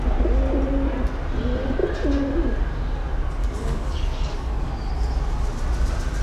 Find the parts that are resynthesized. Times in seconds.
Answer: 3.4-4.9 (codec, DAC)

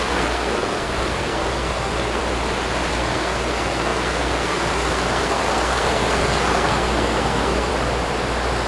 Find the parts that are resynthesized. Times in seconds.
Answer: 0.0-2.2 (codec, SNAC); 2.9-7.7

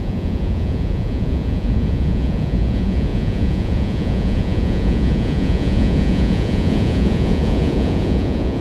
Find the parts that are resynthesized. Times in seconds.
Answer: 0.0-8.6 (vocoder, Vocos)

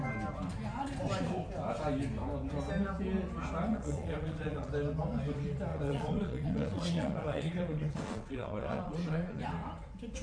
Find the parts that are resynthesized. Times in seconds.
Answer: 3.7-4.7 (vocoder, Vocos); 5.7-9.4

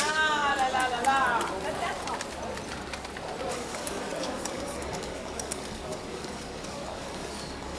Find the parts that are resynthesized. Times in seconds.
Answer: 0.0-0.5 (codec, DAC); 3.5-7.8

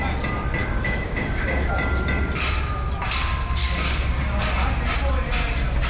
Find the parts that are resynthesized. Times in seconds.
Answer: 0.6-1.7 (codec, DAC); 3.6-4.5

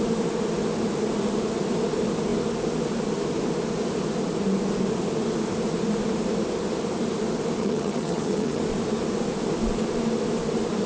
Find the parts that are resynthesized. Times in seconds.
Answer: 7.6-8.6 (vocoder, HiFi-GAN)

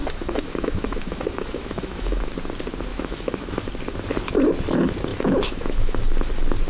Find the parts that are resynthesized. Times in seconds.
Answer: 0.0-2.3 (autoencoder, DAC-VAE); 2.9-3.5; 5.1-6.0